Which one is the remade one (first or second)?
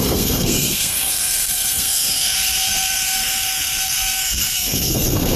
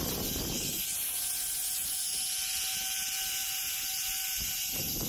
first